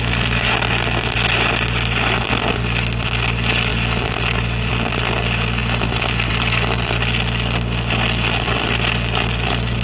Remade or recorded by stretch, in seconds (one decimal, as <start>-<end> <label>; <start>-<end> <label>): 0.0-9.8 recorded